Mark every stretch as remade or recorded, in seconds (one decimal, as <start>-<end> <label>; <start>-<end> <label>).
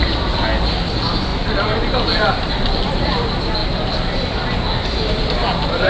0.0-5.9 recorded